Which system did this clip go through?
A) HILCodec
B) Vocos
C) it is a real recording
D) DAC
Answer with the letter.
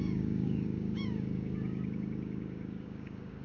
D